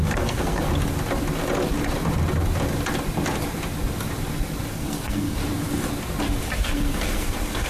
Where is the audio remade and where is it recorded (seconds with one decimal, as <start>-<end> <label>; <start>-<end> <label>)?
0.0-0.7 remade; 0.7-4.7 recorded; 4.7-5.4 remade; 5.4-6.6 recorded; 6.6-7.7 remade